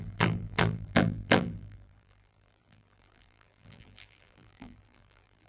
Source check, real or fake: fake